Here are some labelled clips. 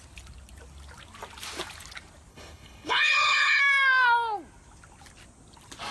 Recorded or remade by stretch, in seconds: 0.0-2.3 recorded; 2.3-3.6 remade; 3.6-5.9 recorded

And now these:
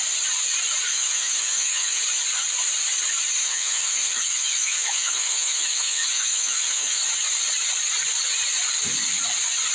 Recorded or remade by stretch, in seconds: 0.0-0.9 recorded; 0.9-2.0 remade; 2.0-3.4 recorded; 3.4-7.0 remade; 7.0-9.7 recorded

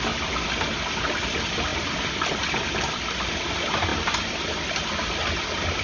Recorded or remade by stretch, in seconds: 0.0-1.7 recorded; 1.7-2.6 remade; 2.6-3.9 recorded; 3.9-4.9 remade; 4.9-5.8 recorded

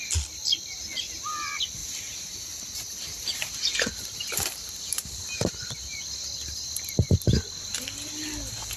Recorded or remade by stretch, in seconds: 0.0-1.8 recorded; 1.8-6.9 remade; 6.9-8.8 recorded

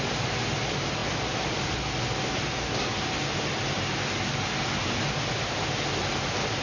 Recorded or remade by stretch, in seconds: 0.0-6.6 recorded

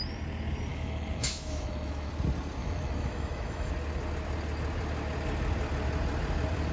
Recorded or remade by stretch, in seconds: 0.0-0.7 recorded; 0.7-2.1 remade; 2.1-2.6 recorded; 2.6-3.7 remade; 3.7-6.7 recorded

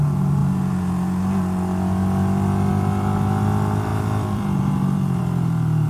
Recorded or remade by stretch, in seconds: 0.0-3.9 recorded; 3.9-5.2 remade; 5.2-5.9 recorded

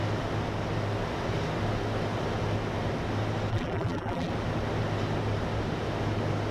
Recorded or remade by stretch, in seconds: 0.0-3.5 recorded; 3.5-4.3 remade; 4.3-6.5 recorded